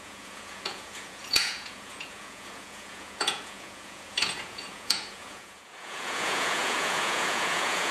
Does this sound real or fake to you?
fake